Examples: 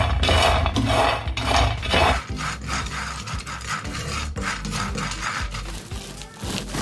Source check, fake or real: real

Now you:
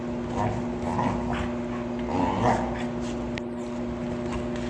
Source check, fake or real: real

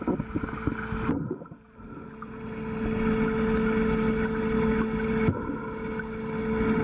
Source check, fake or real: real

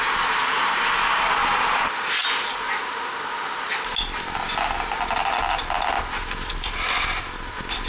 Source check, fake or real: real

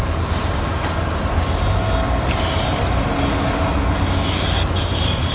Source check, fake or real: real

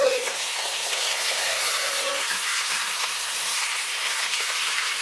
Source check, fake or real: fake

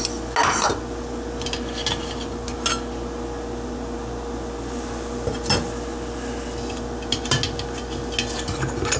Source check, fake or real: real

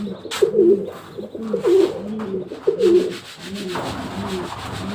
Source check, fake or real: real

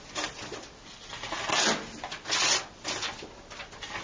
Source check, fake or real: real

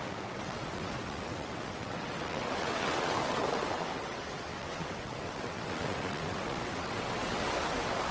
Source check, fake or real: fake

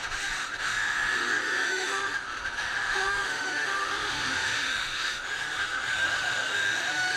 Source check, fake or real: fake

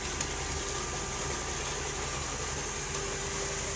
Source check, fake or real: real